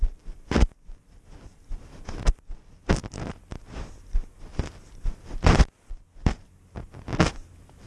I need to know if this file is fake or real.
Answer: real